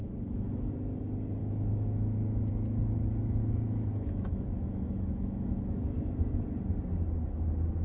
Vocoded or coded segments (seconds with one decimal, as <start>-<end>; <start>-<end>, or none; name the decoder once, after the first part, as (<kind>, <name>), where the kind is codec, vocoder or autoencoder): 0.0-0.7 (autoencoder, DAC-VAE); 1.4-2.5; 3.4-6.4